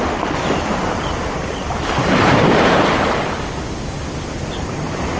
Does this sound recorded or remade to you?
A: recorded